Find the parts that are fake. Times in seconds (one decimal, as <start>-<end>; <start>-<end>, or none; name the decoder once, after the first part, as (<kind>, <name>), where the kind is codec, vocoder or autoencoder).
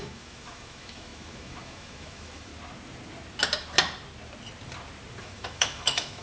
0.0-2.5 (autoencoder, DAC-VAE); 5.2-6.2